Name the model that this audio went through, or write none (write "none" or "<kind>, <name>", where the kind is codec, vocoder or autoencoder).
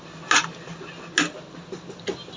none